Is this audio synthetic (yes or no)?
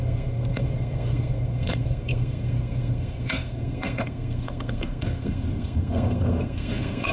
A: yes